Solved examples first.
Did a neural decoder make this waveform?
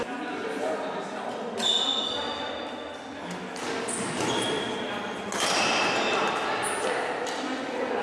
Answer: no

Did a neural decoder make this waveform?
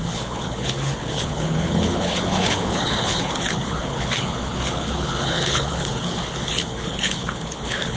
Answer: yes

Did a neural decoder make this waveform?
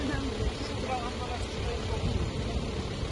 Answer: no